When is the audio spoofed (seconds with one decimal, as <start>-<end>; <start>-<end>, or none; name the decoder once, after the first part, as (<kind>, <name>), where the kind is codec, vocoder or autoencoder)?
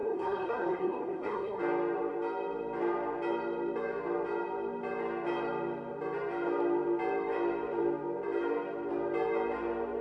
0.0-1.6 (codec, SNAC)